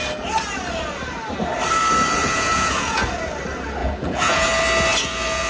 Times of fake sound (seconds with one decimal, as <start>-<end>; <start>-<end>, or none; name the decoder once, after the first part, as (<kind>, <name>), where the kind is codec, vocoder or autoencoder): 2.2-3.2 (vocoder, Vocos); 3.8-4.5; 4.9-5.5